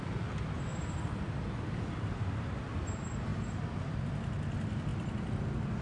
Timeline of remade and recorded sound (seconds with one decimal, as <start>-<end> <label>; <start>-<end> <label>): 0.0-0.7 recorded; 0.7-2.1 remade; 2.1-3.3 recorded; 3.3-4.0 remade; 4.0-5.8 recorded